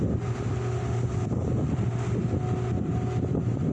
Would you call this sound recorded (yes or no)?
yes